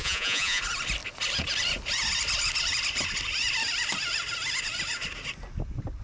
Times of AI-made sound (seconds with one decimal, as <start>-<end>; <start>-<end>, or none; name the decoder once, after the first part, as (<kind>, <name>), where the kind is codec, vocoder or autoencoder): 0.0-0.6 (vocoder, Vocos)